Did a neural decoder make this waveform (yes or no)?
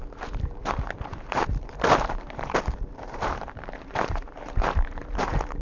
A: yes